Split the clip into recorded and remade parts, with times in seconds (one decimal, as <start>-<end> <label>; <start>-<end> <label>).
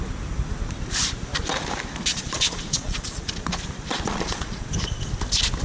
0.0-2.1 recorded; 2.1-3.3 remade; 3.3-3.9 recorded; 3.9-4.7 remade; 4.7-5.6 recorded